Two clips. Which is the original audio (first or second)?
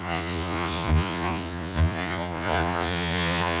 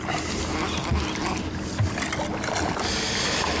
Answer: second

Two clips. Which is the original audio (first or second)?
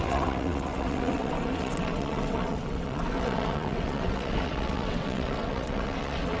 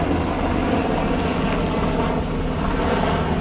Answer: second